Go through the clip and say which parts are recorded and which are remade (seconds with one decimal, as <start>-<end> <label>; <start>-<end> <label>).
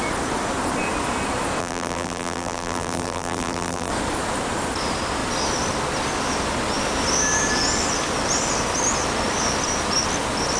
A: 0.0-1.6 recorded; 1.6-3.9 remade; 3.9-10.6 recorded